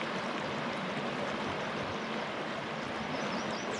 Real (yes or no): yes